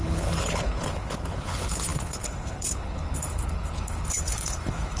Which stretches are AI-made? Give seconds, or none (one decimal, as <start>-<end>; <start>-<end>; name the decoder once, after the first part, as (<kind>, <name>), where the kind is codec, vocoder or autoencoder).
0.0-5.0 (codec, HILCodec)